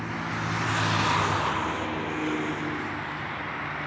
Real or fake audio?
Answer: real